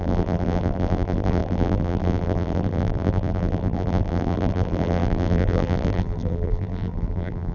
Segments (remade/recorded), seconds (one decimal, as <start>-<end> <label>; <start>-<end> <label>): 0.0-7.5 remade